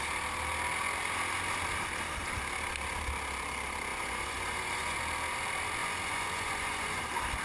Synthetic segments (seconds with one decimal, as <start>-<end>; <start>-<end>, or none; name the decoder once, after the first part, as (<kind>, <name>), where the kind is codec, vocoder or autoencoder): 3.9-5.0 (vocoder, Vocos); 5.8-7.0